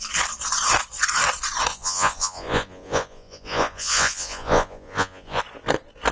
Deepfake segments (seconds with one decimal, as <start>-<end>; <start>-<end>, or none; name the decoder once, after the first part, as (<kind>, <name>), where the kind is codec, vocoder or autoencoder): 1.7-5.4 (vocoder, Vocos)